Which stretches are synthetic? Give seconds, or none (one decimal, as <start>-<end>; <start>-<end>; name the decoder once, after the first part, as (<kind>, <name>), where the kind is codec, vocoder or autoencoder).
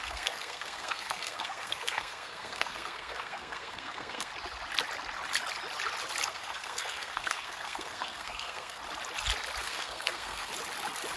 0.0-4.3 (codec, SNAC); 6.3-8.8; 9.6-10.5